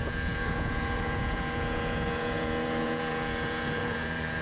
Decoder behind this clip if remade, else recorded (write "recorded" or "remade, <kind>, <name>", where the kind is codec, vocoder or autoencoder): remade, vocoder, Vocos